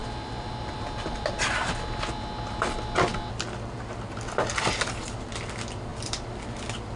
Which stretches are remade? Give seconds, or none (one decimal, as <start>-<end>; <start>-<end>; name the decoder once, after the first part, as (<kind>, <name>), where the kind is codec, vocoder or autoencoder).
0.0-1.7 (vocoder, BigVGAN v2)